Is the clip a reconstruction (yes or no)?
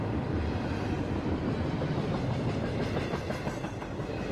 no